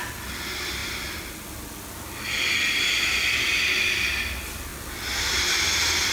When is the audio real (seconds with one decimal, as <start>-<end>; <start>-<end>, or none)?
0.0-6.1

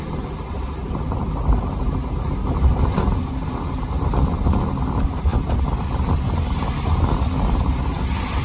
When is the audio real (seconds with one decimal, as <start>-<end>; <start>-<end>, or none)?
0.0-8.4

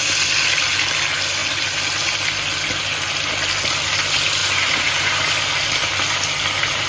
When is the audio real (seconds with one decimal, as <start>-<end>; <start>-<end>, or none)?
0.0-4.4; 5.3-6.9

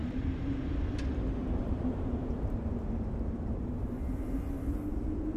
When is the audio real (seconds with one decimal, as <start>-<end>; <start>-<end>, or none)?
0.6-1.4; 3.9-5.4

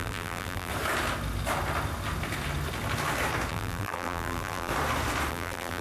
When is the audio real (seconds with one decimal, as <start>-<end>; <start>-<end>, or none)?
0.7-3.5; 4.7-5.3